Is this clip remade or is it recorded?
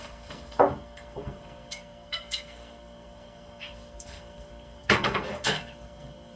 remade